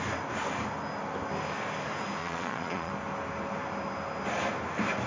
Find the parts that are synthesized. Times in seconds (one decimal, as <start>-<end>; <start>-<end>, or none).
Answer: 2.2-2.9